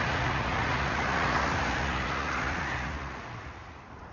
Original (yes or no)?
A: no